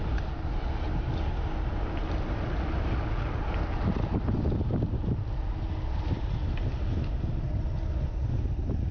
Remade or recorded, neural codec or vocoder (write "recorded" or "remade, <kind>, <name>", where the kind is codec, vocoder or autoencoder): recorded